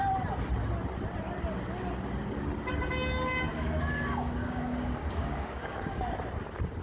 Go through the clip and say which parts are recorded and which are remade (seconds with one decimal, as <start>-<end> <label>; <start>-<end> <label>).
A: 0.0-3.5 recorded; 3.5-6.0 remade; 6.0-6.8 recorded